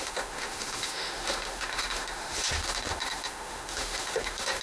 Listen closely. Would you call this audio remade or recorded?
remade